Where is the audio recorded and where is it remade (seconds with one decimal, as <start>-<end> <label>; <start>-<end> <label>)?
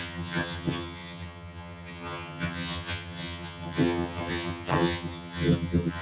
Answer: 0.0-6.0 remade